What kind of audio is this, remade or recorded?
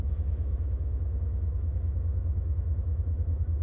remade